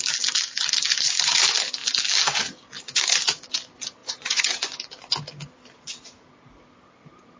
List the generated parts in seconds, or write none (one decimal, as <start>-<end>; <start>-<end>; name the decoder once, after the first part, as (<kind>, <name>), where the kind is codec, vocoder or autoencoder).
4.0-4.8 (vocoder, Vocos)